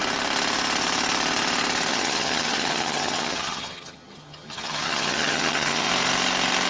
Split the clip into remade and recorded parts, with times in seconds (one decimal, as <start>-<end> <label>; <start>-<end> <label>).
0.0-1.9 recorded; 1.9-5.9 remade; 5.9-6.7 recorded